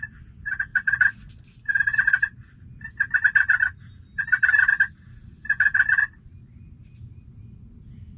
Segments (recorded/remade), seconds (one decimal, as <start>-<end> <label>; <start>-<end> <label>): 0.0-8.2 recorded